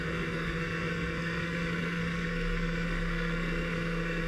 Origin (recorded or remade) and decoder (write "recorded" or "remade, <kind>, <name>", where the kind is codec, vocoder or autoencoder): remade, codec, SNAC